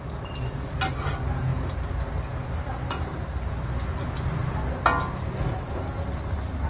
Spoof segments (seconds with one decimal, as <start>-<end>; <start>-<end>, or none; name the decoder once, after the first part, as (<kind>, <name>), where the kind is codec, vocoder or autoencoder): none